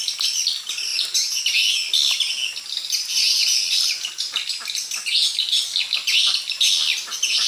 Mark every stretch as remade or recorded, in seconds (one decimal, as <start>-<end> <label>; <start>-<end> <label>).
0.0-7.5 recorded